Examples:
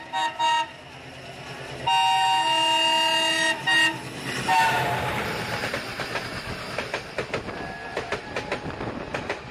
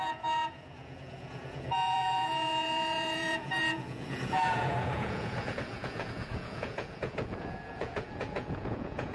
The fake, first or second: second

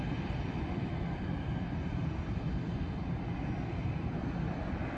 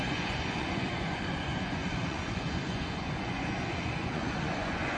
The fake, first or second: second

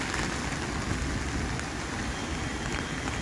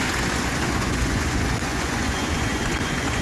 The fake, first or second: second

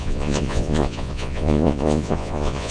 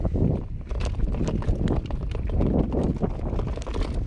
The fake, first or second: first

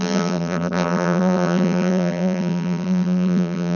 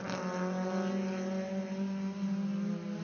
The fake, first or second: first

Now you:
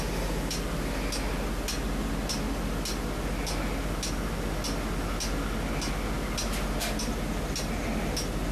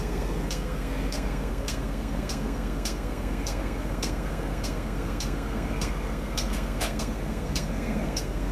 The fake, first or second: second